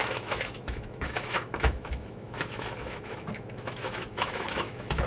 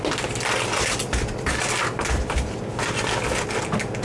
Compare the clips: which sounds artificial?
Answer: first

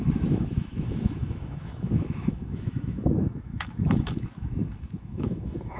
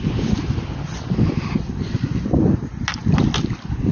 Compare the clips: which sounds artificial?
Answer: first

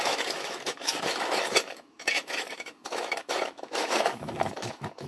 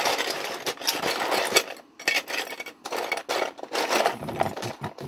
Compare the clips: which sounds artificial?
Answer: first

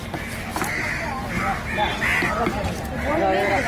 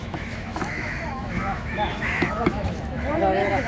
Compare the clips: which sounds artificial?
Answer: second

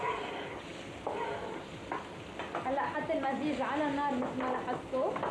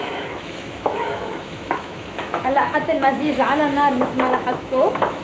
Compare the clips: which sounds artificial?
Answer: second